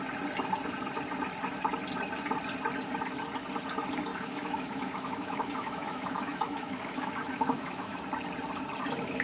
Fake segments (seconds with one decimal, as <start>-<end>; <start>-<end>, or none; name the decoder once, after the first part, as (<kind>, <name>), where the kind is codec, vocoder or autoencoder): 4.1-8.0 (autoencoder, DAC-VAE)